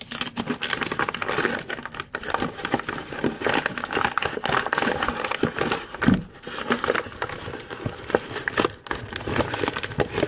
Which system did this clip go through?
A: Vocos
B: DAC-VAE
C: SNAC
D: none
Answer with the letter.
D